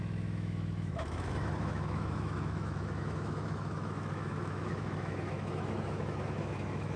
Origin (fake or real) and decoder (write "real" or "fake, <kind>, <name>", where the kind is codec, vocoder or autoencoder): fake, autoencoder, DAC-VAE